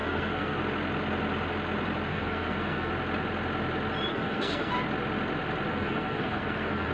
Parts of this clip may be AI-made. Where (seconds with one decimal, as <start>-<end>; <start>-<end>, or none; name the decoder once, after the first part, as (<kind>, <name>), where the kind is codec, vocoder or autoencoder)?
0.0-0.6 (codec, SNAC); 2.1-2.9; 4.1-4.7; 5.7-6.9